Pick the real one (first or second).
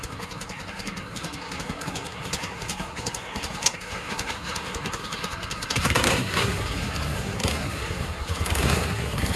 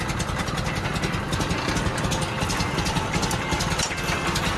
second